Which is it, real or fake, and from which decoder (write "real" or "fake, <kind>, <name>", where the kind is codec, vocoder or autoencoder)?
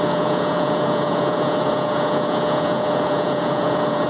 fake, vocoder, Vocos